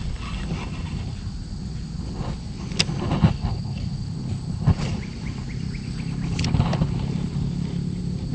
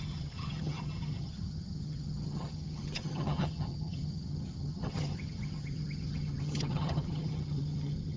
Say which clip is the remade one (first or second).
second